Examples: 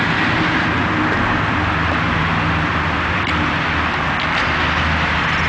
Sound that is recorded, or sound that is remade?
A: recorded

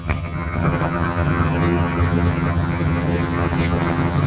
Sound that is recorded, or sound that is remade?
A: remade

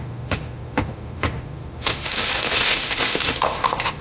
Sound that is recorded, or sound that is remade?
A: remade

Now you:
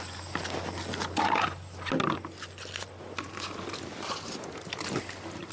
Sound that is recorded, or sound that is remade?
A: recorded